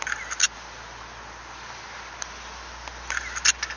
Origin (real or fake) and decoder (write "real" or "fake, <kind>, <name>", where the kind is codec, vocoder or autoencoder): real